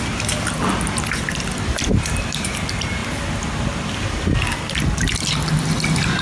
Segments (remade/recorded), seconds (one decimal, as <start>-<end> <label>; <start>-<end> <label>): 0.0-6.2 recorded

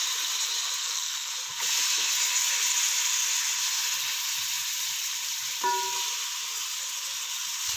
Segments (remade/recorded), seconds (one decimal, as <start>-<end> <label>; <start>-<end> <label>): 0.0-0.8 recorded; 0.8-1.3 remade; 1.3-7.8 recorded

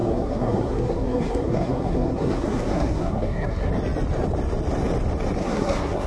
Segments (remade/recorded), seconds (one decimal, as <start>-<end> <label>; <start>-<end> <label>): 0.0-3.7 remade; 3.7-5.4 recorded; 5.4-6.1 remade

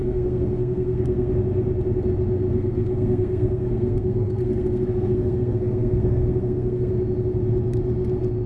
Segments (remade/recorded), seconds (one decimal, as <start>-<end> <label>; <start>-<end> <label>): 0.0-1.3 remade; 1.3-2.5 recorded; 2.5-6.9 remade; 6.9-8.5 recorded